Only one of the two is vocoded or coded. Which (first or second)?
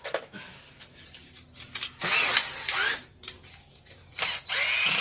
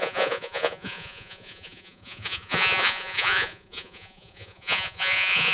second